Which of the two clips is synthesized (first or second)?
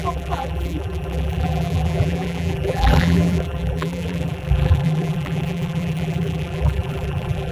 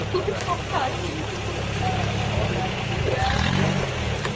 first